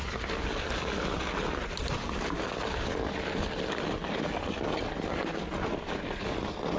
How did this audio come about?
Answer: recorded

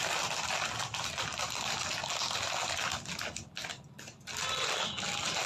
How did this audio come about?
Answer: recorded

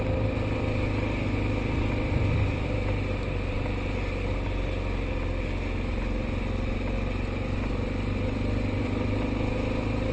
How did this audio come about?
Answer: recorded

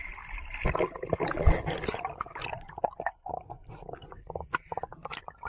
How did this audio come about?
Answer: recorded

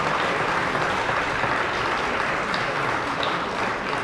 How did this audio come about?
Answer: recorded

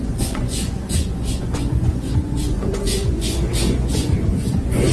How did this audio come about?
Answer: remade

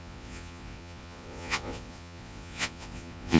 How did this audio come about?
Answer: remade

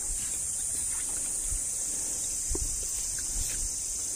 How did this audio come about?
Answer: recorded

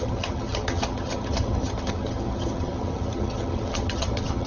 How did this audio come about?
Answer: remade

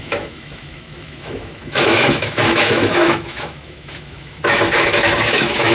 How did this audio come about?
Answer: remade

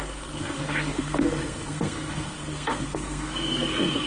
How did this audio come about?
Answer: remade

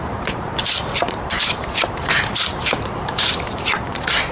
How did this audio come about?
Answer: remade